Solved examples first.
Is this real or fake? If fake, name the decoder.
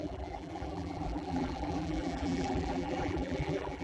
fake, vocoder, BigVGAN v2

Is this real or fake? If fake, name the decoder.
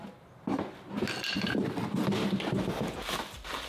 real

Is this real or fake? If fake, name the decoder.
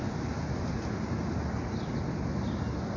real